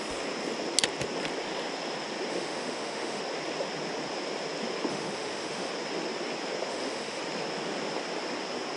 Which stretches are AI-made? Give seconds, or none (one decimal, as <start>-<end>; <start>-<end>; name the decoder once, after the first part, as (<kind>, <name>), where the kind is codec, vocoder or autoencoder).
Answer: 2.3-3.2 (autoencoder, DAC-VAE); 4.9-5.7; 6.7-7.2